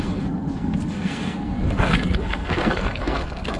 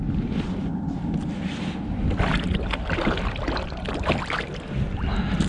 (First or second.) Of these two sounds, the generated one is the first